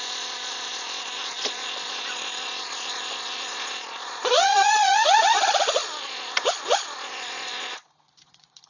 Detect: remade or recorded remade